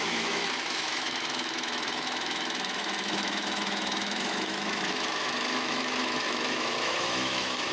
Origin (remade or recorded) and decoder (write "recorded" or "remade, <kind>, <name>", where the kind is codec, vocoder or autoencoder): remade, autoencoder, DAC-VAE